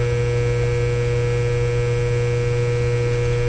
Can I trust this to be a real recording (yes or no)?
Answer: yes